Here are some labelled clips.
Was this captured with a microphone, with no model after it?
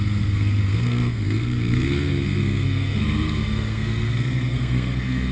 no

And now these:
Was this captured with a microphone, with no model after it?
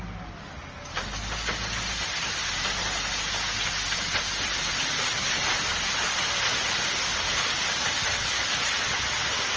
yes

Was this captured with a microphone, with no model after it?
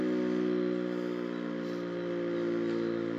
yes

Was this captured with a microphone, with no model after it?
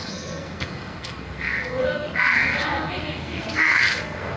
no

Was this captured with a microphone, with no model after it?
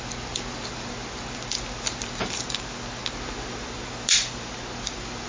yes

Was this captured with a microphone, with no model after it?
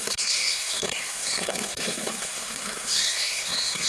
no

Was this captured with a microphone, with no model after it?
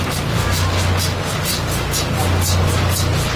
yes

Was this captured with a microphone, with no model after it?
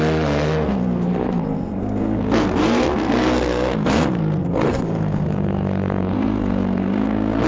no